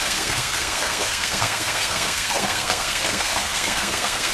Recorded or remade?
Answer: remade